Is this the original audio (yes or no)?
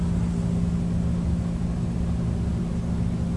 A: yes